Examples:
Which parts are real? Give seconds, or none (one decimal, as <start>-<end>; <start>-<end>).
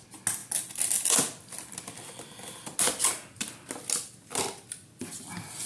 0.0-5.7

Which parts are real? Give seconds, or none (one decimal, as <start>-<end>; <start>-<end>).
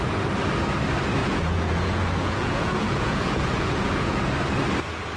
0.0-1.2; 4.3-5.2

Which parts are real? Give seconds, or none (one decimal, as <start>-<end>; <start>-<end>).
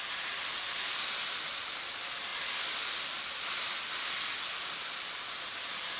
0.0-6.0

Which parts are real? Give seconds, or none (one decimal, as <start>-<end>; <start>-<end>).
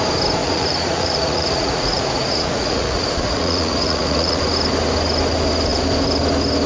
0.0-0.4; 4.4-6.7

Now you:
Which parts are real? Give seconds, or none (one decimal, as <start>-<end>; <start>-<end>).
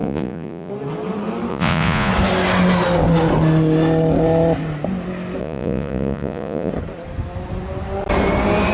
0.7-1.5; 2.1-5.4; 6.7-8.7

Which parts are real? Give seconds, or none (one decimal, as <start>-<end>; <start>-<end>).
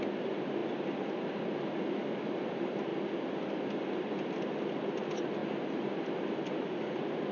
0.0-7.3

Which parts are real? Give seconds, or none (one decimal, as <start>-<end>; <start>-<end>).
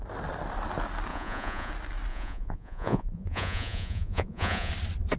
0.0-1.1; 1.7-2.1; 4.7-5.2